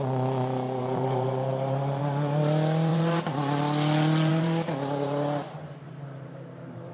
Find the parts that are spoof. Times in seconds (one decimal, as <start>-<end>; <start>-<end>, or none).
0.8-2.0; 2.9-3.6; 4.3-6.9